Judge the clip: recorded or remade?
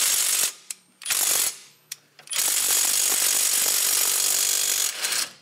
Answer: remade